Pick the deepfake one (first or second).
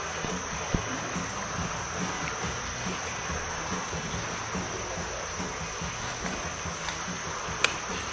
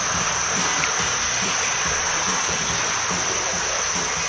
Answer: second